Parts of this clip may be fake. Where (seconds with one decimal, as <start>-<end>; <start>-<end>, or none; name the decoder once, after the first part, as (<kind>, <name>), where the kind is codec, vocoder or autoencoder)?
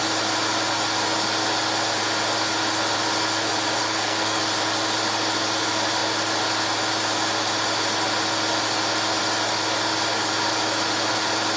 3.8-4.4 (codec, SNAC)